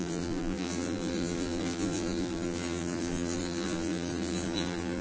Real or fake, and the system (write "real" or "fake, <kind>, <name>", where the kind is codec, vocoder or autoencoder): fake, vocoder, BigVGAN v2